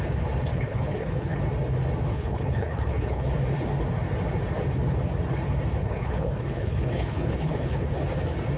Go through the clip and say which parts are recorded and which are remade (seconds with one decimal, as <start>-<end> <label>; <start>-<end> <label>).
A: 0.0-0.5 recorded; 0.5-1.4 remade; 1.4-2.1 recorded; 2.1-3.3 remade; 3.3-5.8 recorded; 5.8-7.9 remade; 7.9-8.6 recorded